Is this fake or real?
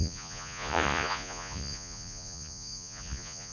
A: fake